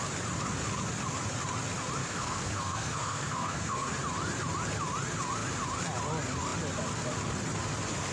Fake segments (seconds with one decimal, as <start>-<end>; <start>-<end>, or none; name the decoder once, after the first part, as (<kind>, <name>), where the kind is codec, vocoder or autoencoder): 2.0-3.9 (codec, SNAC)